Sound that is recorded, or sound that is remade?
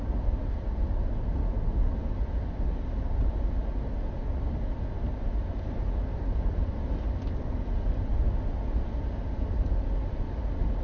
recorded